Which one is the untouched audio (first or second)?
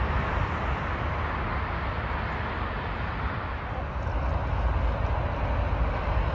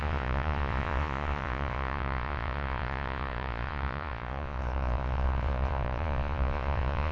first